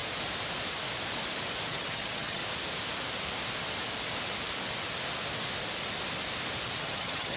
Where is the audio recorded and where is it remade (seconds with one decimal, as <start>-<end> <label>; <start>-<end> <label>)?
0.0-1.7 recorded; 1.7-2.4 remade; 2.4-6.8 recorded; 6.8-7.4 remade